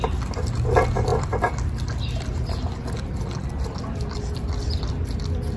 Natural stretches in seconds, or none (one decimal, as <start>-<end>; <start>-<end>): 0.0-5.6

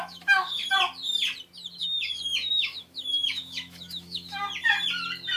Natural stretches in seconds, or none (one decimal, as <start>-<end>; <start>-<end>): 0.6-1.8; 4.5-5.4

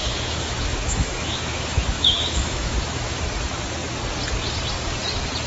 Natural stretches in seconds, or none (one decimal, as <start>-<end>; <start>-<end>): 3.2-5.5